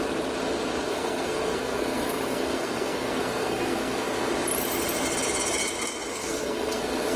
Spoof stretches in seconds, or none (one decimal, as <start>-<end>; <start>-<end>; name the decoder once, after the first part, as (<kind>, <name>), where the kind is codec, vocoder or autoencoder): 0.9-4.3 (codec, SNAC); 6.1-7.2

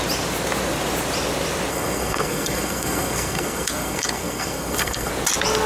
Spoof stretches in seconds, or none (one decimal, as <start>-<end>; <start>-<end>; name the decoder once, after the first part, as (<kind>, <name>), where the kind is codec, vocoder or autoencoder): 1.7-5.1 (codec, SNAC)

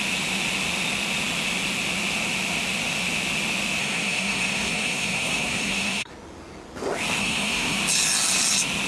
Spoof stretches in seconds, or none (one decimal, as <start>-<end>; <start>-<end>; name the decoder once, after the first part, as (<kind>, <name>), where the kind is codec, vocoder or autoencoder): 3.8-6.1 (codec, SNAC); 7.2-7.8

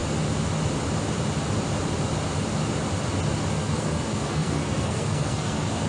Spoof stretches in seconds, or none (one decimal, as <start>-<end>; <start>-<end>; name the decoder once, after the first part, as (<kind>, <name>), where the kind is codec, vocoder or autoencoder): 3.5-5.9 (codec, SNAC)

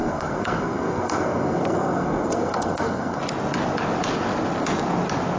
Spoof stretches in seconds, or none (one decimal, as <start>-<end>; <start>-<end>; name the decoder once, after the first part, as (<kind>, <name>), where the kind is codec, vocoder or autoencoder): 0.0-3.2 (codec, SNAC)